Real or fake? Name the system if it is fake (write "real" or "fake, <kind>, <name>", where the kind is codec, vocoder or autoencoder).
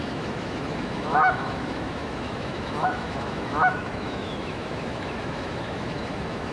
fake, autoencoder, DAC-VAE